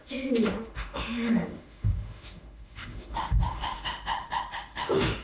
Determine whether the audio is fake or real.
fake